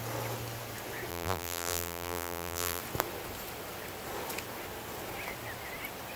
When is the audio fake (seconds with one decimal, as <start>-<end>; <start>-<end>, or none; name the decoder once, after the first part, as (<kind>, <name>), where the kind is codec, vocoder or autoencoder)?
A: 1.1-2.8 (vocoder, BigVGAN v2)

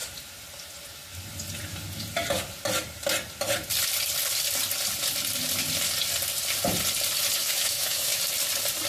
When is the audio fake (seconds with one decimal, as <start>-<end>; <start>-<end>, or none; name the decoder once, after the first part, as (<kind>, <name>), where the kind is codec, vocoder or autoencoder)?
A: 7.4-8.2 (autoencoder, DAC-VAE)

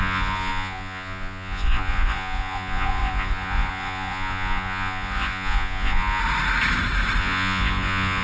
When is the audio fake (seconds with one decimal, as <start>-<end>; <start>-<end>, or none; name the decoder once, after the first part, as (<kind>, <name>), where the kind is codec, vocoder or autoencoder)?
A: 0.0-6.2 (vocoder, Vocos); 7.2-8.2

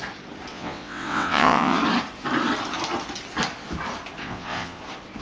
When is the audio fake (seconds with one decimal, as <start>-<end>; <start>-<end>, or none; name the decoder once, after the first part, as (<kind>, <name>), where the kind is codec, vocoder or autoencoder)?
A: 0.5-1.8 (vocoder, WaveNeXt); 4.2-4.8

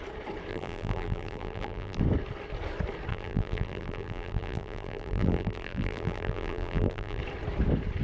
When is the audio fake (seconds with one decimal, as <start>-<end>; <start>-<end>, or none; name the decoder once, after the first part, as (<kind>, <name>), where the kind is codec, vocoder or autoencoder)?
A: 0.5-2.0 (vocoder, BigVGAN v2); 3.1-7.2